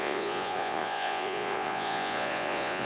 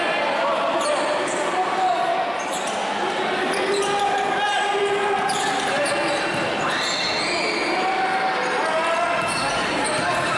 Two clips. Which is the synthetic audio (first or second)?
first